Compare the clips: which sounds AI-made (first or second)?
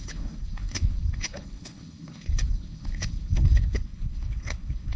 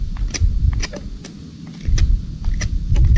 first